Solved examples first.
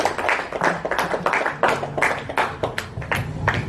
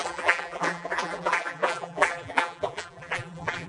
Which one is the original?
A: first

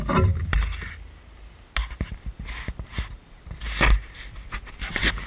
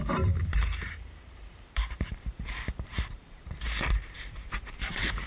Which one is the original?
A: first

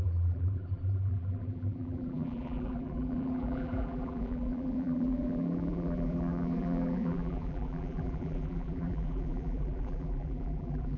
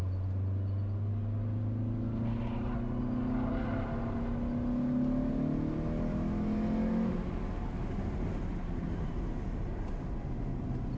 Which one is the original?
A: second